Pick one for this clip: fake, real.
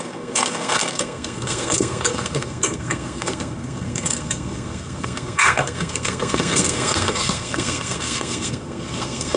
fake